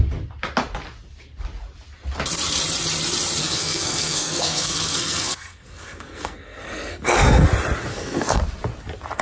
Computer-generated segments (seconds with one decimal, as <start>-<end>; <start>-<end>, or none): 3.4-7.5; 7.9-8.4